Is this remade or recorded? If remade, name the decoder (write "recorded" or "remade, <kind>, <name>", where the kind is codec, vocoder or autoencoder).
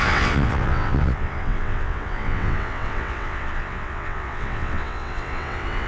remade, vocoder, WaveNeXt